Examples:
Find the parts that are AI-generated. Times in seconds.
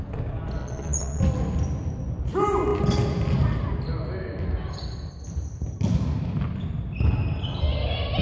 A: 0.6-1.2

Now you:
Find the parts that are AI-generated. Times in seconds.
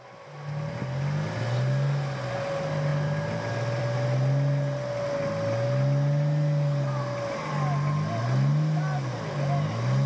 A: none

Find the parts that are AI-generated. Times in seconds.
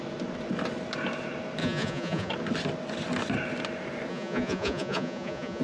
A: 1.6-2.3; 4.1-5.6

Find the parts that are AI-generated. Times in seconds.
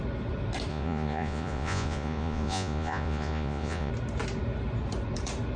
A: 0.7-3.9